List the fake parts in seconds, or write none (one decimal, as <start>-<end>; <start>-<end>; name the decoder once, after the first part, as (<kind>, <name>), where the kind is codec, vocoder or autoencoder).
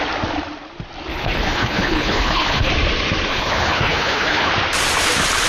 1.1-2.7 (codec, HILCodec); 3.3-4.5